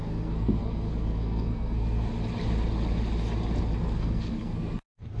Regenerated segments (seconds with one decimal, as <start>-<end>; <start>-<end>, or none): 0.0-2.1; 3.8-5.2